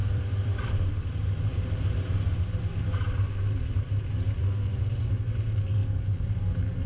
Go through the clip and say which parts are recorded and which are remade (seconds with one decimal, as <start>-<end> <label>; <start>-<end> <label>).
0.0-0.8 remade; 0.8-1.5 recorded; 1.5-3.2 remade; 3.2-6.9 recorded